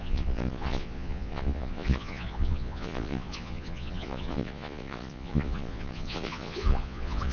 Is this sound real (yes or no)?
no